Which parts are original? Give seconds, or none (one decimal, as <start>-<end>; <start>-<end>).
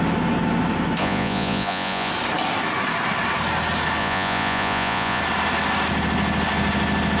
0.0-1.0; 2.1-4.0; 5.2-7.2